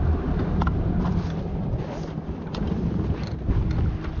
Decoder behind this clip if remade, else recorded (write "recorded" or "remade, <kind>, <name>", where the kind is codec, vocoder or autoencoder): recorded